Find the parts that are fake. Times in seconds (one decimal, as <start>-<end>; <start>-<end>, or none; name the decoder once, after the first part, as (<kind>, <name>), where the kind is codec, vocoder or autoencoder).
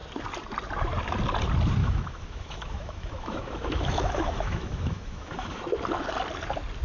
1.8-5.6 (autoencoder, DAC-VAE)